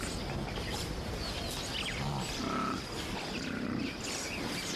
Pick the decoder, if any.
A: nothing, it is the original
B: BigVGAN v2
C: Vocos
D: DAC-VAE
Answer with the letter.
A